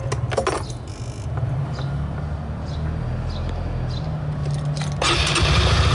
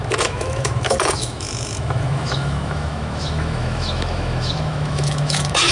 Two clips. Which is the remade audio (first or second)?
second